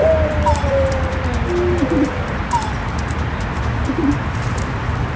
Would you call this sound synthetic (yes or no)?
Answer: yes